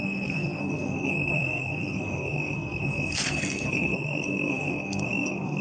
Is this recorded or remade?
remade